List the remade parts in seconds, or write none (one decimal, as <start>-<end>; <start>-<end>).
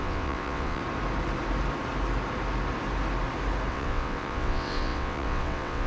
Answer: 0.0-0.8; 3.7-5.9